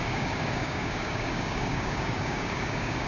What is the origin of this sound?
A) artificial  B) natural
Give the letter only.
A